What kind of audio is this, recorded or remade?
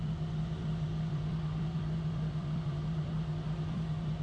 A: remade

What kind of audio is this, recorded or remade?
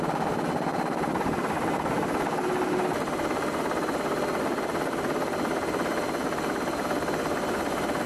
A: recorded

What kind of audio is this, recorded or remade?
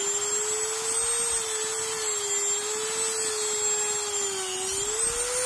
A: recorded